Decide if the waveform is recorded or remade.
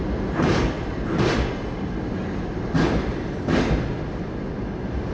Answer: recorded